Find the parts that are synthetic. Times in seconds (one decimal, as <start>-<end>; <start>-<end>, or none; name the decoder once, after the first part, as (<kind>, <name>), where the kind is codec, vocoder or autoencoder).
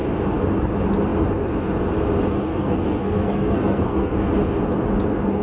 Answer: 2.5-4.1 (codec, SNAC)